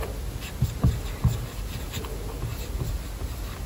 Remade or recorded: recorded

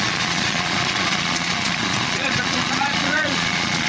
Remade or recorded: remade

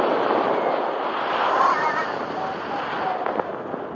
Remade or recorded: recorded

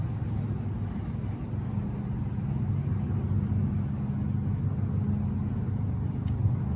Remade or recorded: recorded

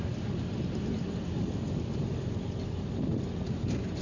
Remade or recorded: recorded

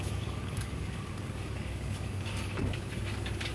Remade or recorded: remade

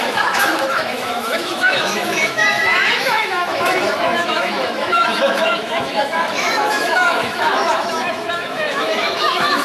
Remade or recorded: remade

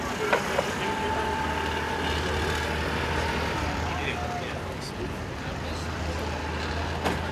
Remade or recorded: recorded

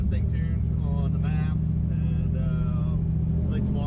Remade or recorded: recorded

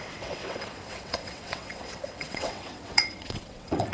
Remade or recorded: remade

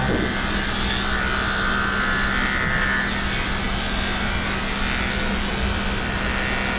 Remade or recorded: recorded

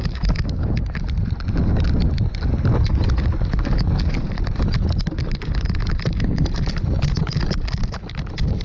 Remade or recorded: recorded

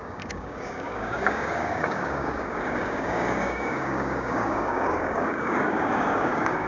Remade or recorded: remade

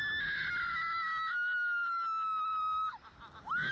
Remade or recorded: recorded